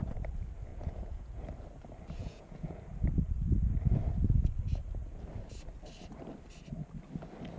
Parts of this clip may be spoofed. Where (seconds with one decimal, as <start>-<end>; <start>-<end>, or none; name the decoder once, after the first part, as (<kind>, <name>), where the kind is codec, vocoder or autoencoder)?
0.7-1.4 (vocoder, Vocos); 2.2-2.8